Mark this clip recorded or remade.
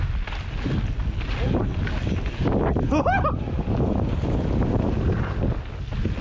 recorded